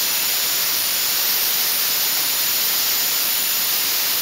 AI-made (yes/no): no